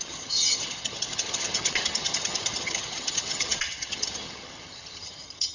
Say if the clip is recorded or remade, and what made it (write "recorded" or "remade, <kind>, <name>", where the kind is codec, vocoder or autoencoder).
remade, vocoder, HiFi-GAN